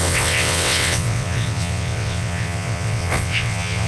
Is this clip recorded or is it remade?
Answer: remade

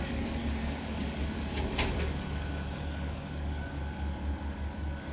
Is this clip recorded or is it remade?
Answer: remade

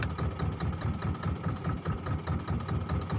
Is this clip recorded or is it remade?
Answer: remade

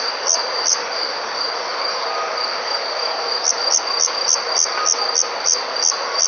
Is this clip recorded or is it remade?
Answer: recorded